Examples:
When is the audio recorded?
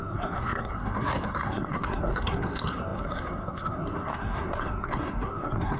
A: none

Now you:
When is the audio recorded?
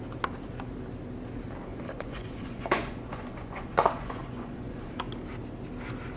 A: 0.0-1.7; 4.9-6.2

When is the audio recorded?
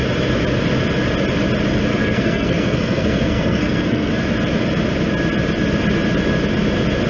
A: 0.0-1.9; 4.1-7.1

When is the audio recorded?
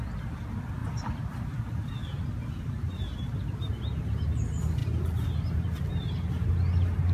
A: 0.0-7.1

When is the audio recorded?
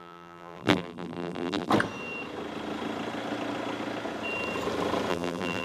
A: 1.7-5.1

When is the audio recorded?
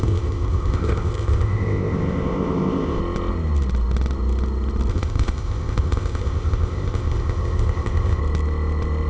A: 3.0-4.9; 8.2-9.1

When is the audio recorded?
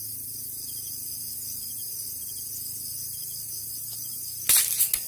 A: 0.0-5.1